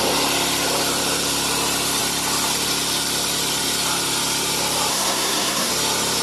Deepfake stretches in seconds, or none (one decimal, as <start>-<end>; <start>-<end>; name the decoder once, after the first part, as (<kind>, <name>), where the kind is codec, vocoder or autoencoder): 4.9-5.7 (codec, SNAC)